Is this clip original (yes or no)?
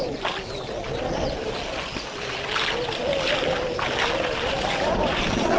yes